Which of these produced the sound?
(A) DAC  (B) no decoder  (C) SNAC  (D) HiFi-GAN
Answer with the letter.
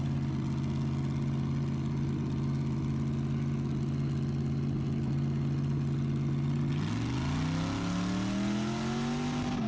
B